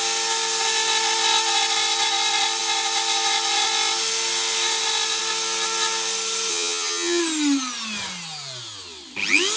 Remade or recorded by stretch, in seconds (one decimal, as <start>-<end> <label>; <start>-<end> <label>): 0.0-6.5 recorded; 6.5-7.2 remade; 7.2-9.6 recorded